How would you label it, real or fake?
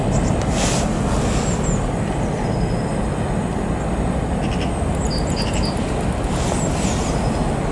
real